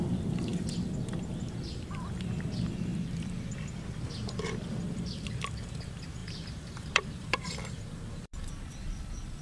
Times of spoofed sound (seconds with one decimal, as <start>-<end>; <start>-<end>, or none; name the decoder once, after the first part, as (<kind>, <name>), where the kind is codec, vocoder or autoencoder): 6.2-8.5 (vocoder, BigVGAN v2)